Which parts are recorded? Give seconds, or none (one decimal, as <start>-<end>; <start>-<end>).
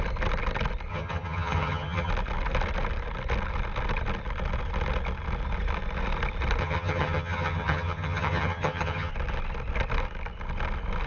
0.0-0.9; 2.1-6.6; 9.1-11.1